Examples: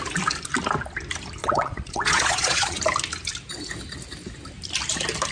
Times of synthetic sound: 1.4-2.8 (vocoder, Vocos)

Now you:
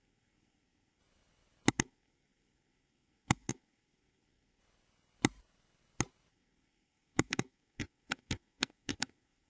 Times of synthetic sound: 0.0-1.0 (codec, SNAC); 1.7-4.6; 6.3-9.5